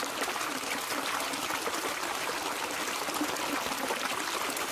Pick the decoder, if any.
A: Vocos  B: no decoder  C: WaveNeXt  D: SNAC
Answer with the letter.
B